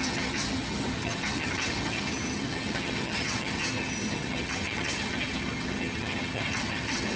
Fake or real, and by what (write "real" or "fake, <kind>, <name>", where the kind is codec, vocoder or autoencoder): fake, vocoder, HiFi-GAN